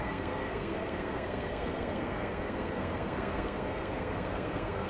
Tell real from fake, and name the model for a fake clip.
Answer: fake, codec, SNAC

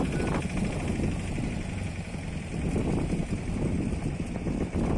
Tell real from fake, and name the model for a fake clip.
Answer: real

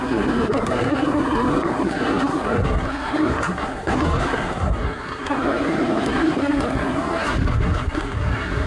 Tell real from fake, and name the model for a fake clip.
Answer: fake, codec, SNAC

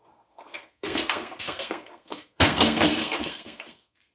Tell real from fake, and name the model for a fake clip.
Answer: fake, codec, SNAC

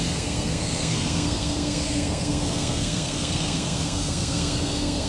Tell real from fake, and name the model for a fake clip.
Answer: fake, codec, SNAC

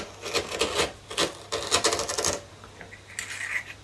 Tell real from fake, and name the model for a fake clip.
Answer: real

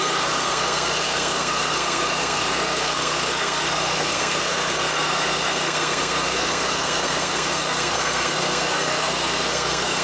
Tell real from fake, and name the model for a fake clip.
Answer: fake, codec, SNAC